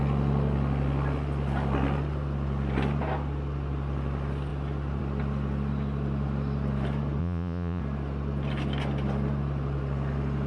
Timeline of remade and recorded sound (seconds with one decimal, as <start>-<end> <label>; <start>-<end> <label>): 0.0-7.2 recorded; 7.2-7.8 remade; 7.8-10.5 recorded